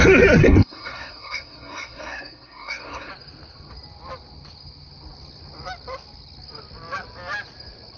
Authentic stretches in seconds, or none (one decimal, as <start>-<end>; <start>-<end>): 0.0-0.4; 3.1-8.0